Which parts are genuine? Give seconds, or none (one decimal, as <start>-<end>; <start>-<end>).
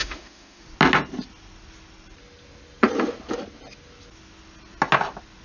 0.6-5.4